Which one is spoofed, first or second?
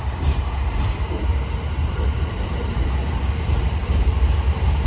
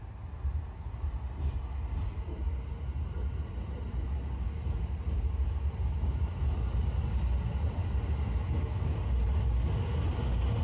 first